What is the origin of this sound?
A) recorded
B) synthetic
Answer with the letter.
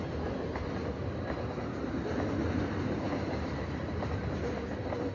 A